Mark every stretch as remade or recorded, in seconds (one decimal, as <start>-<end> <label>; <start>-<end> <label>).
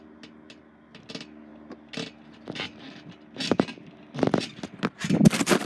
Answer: 0.0-5.6 recorded